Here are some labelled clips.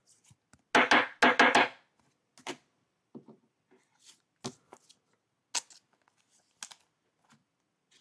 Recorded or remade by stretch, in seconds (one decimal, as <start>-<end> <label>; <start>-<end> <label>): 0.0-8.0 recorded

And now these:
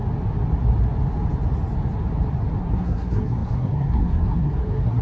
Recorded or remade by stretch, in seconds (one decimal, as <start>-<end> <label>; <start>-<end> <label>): 0.0-2.6 recorded; 2.6-5.0 remade

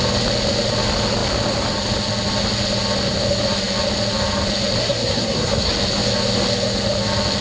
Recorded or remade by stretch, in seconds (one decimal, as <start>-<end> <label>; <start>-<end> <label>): 0.0-4.8 recorded; 4.8-5.7 remade; 5.7-7.4 recorded